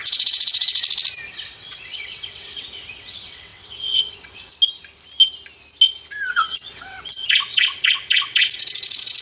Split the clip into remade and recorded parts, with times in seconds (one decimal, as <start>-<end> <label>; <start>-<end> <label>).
0.0-0.8 remade; 0.8-1.3 recorded; 1.3-4.5 remade; 4.5-6.3 recorded; 6.3-9.2 remade